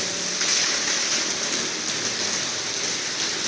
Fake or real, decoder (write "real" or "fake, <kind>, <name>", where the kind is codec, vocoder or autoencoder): real